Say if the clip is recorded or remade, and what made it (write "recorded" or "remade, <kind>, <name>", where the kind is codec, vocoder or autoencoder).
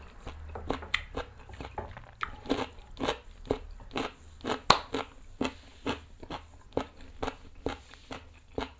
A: recorded